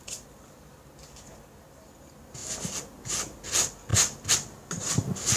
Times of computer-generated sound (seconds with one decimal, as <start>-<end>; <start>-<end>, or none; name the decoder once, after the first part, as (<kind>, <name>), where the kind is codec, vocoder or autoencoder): none

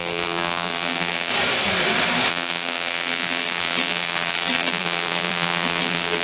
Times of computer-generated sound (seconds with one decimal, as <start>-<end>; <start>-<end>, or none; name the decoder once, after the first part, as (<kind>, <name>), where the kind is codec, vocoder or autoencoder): 0.0-1.3 (vocoder, BigVGAN v2); 2.3-6.2

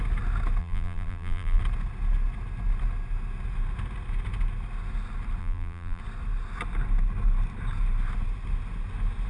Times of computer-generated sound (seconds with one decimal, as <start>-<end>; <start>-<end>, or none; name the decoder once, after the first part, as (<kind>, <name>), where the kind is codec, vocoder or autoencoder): 0.6-1.6 (vocoder, BigVGAN v2); 5.4-6.0

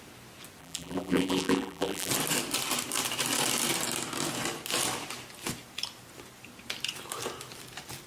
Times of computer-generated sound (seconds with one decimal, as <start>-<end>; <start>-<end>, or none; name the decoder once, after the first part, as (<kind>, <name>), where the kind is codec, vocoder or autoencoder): 0.6-2.1 (vocoder, BigVGAN v2)